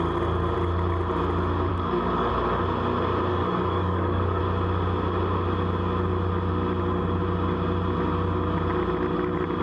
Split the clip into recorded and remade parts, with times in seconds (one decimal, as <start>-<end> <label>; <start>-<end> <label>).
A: 0.0-1.7 recorded; 1.7-2.3 remade; 2.3-3.3 recorded; 3.3-4.4 remade; 4.4-9.6 recorded